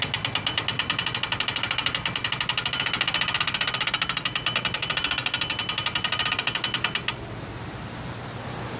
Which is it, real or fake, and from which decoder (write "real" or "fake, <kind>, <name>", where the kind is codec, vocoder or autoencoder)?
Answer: real